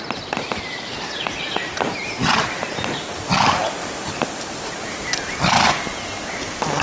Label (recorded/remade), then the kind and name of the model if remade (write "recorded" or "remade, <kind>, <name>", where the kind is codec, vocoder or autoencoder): recorded